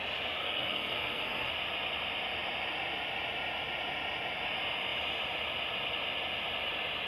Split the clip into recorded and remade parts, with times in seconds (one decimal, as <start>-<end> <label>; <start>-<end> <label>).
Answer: 0.0-0.4 recorded; 0.4-1.5 remade; 1.5-7.1 recorded